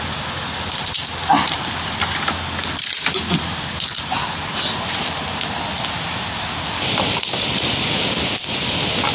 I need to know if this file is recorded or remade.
recorded